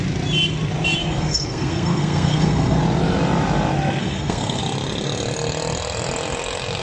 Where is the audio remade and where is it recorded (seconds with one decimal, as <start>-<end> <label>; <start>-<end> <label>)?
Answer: 0.0-1.0 recorded; 1.0-2.8 remade; 2.8-4.0 recorded; 4.0-4.6 remade; 4.6-6.8 recorded